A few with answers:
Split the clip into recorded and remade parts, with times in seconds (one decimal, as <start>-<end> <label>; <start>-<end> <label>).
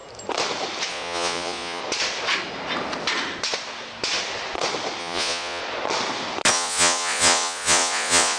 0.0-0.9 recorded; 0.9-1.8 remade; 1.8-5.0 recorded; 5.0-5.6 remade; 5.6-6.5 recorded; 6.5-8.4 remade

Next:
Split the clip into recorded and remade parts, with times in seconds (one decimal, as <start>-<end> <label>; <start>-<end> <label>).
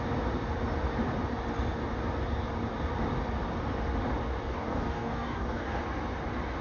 0.0-4.5 recorded; 4.5-5.8 remade; 5.8-6.6 recorded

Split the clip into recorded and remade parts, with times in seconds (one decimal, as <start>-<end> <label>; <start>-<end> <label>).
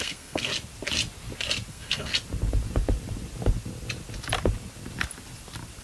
0.0-0.5 remade; 0.5-1.7 recorded; 1.7-2.1 remade; 2.1-5.8 recorded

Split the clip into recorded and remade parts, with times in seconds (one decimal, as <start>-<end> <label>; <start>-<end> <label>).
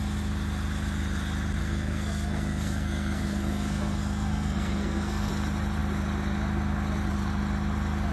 0.0-1.6 recorded; 1.6-5.3 remade; 5.3-8.1 recorded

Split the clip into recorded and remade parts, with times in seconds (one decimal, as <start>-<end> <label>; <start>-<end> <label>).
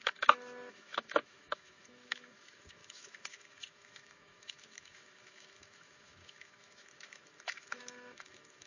0.0-8.7 remade